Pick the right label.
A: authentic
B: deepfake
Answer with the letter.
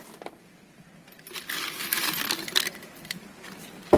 A